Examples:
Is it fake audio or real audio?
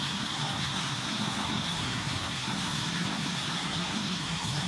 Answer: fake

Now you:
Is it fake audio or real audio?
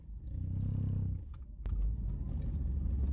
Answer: real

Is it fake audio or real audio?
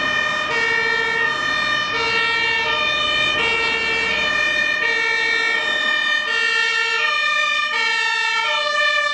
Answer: real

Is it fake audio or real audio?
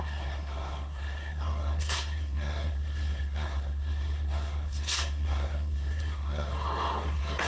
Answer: fake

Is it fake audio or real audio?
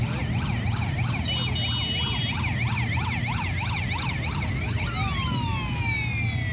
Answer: real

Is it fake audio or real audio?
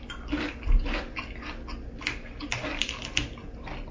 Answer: real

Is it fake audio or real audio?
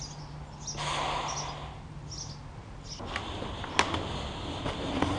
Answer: real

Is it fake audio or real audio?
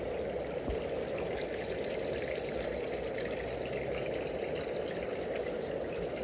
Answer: real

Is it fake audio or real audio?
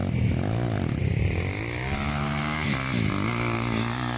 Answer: real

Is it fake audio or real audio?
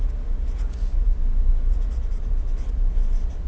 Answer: real